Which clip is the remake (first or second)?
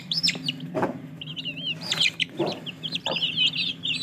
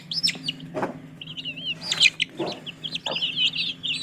first